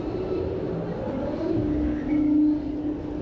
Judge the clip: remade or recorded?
recorded